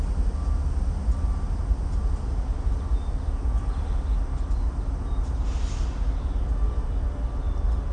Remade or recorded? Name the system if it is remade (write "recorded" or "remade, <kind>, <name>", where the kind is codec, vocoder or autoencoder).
recorded